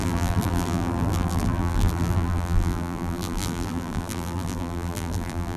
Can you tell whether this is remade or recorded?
remade